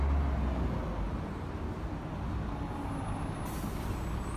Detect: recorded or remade recorded